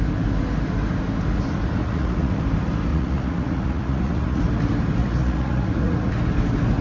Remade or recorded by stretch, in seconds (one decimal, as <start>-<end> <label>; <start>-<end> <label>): 0.0-1.8 recorded; 1.8-2.4 remade; 2.4-2.9 recorded; 2.9-4.4 remade; 4.4-5.0 recorded; 5.0-6.1 remade; 6.1-6.8 recorded